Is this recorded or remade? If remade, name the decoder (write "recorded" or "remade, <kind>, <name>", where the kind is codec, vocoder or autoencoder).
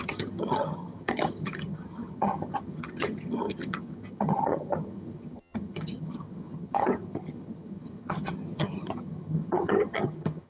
remade, vocoder, HiFi-GAN